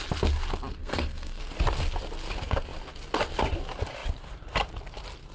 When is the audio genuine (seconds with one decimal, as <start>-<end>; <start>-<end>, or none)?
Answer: 0.0-0.8; 1.4-5.3